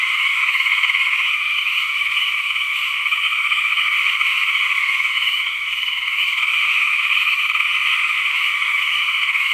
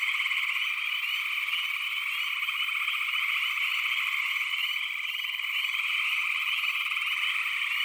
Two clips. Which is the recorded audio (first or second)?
second